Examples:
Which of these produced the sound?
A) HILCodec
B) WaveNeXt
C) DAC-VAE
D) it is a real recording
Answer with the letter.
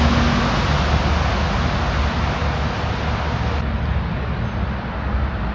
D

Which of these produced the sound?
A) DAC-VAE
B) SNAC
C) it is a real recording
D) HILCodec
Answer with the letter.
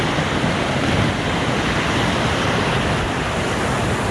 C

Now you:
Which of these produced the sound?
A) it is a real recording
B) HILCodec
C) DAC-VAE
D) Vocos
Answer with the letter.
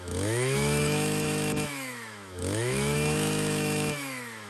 C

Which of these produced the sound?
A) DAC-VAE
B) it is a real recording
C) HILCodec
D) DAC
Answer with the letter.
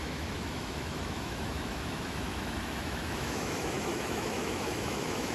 A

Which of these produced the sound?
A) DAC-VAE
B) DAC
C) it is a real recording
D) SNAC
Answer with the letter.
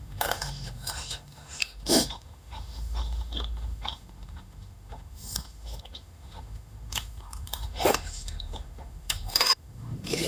A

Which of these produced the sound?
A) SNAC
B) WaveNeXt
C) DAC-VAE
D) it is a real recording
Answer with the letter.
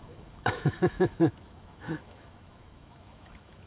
C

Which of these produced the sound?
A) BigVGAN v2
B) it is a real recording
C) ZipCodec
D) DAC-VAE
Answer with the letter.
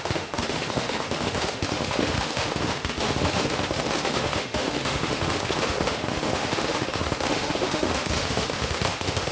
D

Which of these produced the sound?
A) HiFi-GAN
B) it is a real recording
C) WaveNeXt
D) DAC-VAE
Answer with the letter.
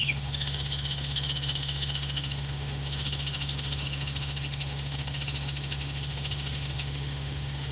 D